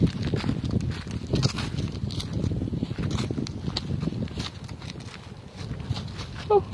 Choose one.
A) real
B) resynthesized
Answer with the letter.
A